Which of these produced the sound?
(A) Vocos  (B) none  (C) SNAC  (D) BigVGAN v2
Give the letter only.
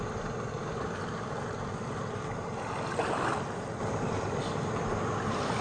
B